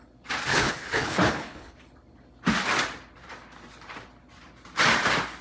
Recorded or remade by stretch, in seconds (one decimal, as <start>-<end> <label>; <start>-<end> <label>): 0.0-0.5 recorded; 0.5-1.8 remade; 1.8-5.4 recorded